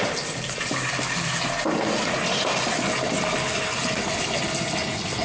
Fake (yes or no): no